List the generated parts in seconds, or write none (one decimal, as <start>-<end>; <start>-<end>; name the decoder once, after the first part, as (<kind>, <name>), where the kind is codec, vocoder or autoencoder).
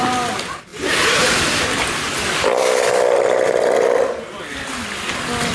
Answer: none